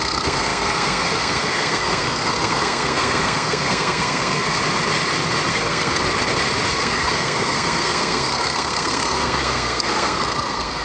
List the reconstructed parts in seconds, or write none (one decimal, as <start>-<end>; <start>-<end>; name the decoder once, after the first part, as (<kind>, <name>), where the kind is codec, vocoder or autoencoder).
0.0-4.6 (codec, SNAC); 5.5-6.0; 6.7-10.8